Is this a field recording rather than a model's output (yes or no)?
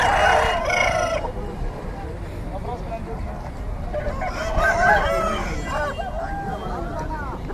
yes